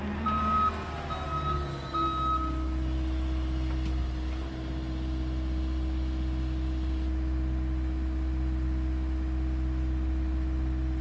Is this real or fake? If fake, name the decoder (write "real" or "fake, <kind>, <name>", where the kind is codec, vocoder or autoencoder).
real